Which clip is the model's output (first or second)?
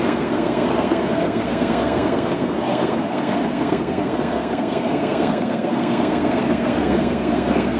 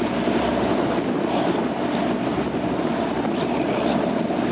first